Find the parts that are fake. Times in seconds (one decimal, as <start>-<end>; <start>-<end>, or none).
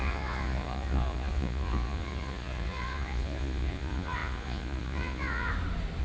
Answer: 0.0-5.5